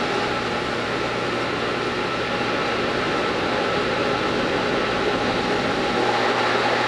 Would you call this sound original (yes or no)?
yes